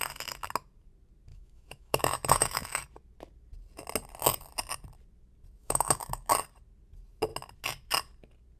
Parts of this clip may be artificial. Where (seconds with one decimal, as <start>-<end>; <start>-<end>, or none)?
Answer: 1.3-2.8; 5.6-6.3